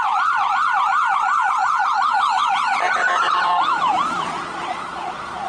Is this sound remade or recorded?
remade